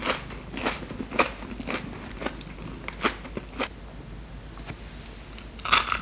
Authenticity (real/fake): real